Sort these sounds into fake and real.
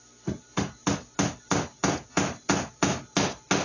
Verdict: real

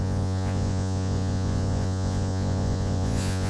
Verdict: fake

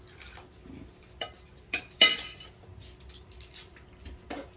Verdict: real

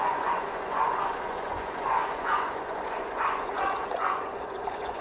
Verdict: fake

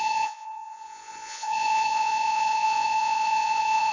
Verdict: fake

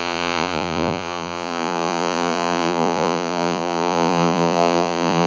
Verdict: fake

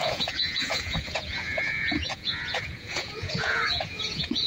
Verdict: fake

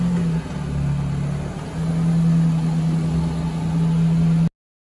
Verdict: real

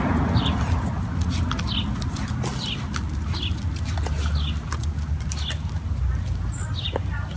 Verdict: real